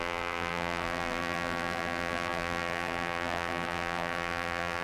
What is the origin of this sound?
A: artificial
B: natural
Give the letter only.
A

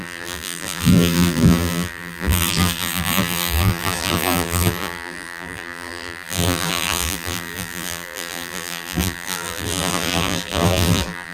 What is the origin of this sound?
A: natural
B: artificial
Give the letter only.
B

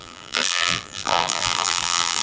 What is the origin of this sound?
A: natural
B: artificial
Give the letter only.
B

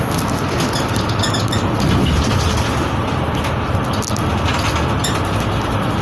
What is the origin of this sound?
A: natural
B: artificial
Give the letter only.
A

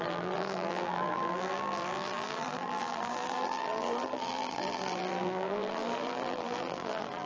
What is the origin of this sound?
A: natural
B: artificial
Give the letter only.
B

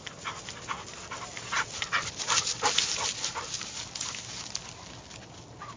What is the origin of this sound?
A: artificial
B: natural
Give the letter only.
B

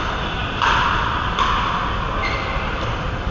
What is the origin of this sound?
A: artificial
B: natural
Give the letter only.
B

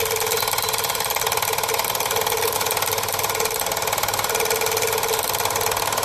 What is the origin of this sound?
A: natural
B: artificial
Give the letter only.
A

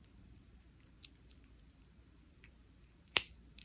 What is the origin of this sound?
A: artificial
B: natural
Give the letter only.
A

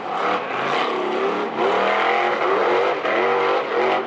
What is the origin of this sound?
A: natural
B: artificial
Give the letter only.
A